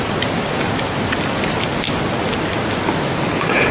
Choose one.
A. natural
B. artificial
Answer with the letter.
A